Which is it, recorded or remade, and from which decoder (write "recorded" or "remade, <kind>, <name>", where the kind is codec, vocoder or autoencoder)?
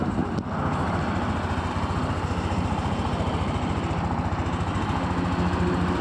recorded